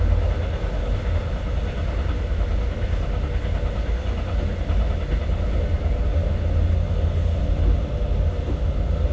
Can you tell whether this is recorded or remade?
recorded